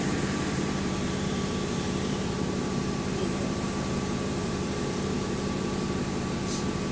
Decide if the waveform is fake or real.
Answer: fake